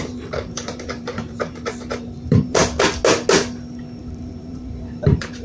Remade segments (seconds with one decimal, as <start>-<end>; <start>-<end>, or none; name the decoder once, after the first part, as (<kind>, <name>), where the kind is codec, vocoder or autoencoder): 0.0-2.6 (vocoder, BigVGAN v2); 4.0-5.4